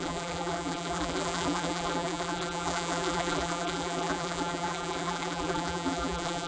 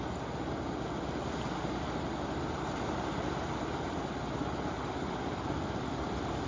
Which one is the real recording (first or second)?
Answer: second